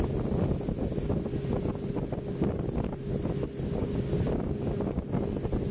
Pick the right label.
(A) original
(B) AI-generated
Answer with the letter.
A